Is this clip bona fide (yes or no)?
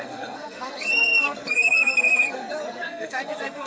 no